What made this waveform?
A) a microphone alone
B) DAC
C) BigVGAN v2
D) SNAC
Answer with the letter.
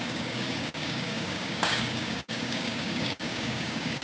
B